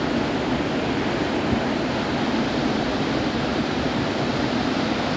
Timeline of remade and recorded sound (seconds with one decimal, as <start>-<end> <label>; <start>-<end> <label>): 0.0-3.5 recorded; 3.5-4.6 remade; 4.6-5.2 recorded